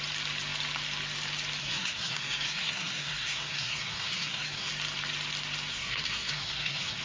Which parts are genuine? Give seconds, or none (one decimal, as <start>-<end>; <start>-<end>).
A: 0.0-1.6; 4.7-5.7